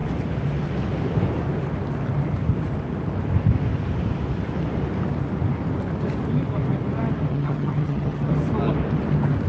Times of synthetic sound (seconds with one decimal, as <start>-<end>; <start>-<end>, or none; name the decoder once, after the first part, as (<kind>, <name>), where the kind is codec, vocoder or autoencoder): 7.3-8.3 (vocoder, HiFi-GAN)